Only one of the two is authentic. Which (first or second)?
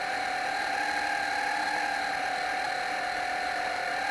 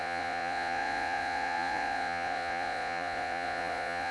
first